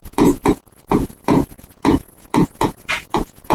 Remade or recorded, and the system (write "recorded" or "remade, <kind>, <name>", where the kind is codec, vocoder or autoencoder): remade, vocoder, Vocos